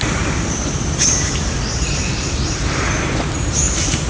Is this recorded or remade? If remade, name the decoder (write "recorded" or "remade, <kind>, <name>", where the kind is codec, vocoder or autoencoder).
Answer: remade, vocoder, BigVGAN v2